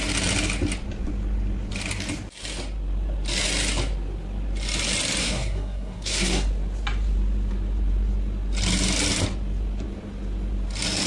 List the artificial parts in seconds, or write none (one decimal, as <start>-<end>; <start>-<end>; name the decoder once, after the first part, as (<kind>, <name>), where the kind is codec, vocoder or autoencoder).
5.2-6.5 (codec, SNAC)